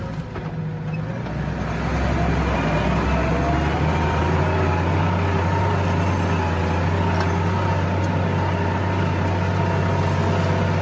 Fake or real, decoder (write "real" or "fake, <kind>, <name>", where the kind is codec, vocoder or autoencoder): real